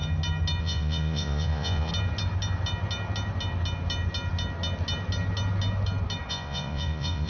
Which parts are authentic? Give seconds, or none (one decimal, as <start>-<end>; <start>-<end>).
0.0-0.6; 1.9-6.3